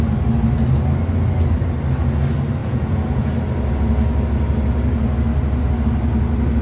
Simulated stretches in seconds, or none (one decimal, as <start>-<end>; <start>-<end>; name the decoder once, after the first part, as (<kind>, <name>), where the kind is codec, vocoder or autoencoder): 2.6-3.3 (vocoder, Vocos)